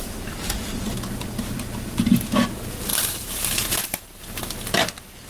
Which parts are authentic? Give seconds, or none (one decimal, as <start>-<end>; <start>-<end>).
0.0-2.9; 4.0-5.3